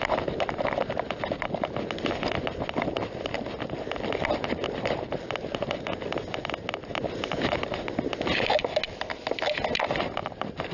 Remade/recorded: recorded